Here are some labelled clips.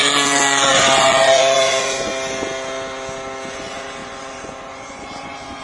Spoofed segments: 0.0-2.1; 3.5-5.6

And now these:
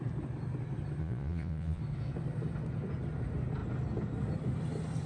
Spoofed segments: 1.0-1.8

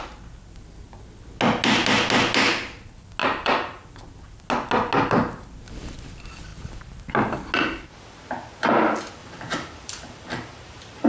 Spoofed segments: 3.2-3.9; 9.2-11.1

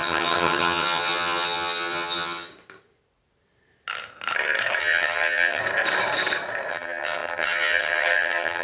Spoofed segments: 0.0-2.5; 4.8-5.6; 6.7-8.6

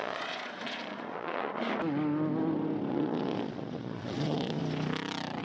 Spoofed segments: 0.0-1.7; 2.9-4.6

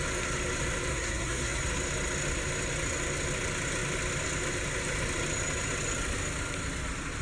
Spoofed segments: 0.9-1.6

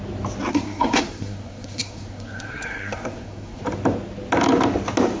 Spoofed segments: 0.5-3.6

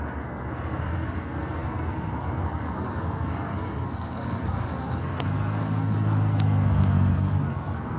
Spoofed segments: 0.0-8.0